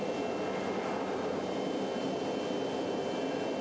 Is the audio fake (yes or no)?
no